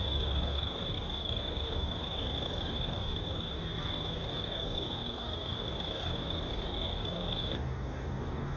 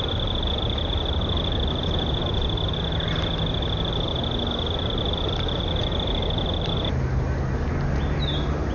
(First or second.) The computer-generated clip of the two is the first